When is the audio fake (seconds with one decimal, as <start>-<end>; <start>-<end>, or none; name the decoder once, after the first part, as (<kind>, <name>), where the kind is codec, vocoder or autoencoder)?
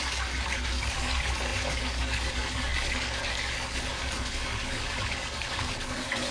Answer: 0.0-6.3 (codec, DAC)